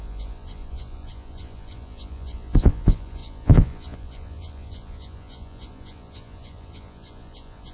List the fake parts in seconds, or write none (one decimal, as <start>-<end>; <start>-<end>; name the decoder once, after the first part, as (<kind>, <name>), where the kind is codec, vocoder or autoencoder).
0.0-7.7 (vocoder, Vocos)